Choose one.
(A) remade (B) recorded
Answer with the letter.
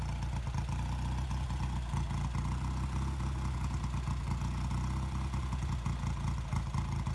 B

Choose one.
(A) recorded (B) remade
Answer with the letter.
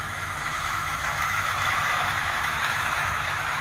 B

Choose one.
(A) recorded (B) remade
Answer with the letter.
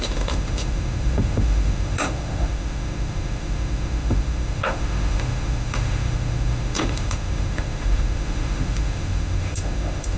B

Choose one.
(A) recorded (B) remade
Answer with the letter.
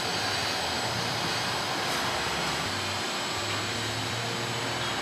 A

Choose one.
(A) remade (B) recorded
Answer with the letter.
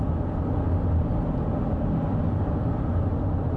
B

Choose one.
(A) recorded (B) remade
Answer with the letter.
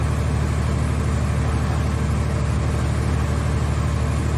A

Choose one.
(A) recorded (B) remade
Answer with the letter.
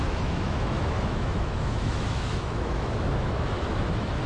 B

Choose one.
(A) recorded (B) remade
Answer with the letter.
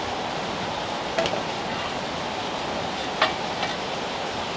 A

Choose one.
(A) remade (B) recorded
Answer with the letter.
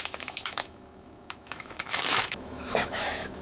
A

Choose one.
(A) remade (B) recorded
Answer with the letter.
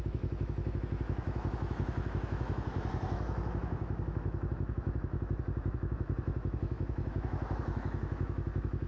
A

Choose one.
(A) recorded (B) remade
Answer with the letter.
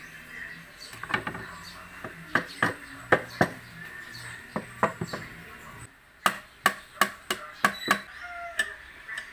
A